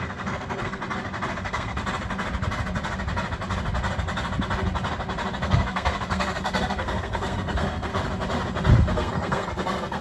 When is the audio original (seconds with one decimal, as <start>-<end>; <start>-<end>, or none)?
0.8-1.4; 1.8-5.4; 7.9-8.8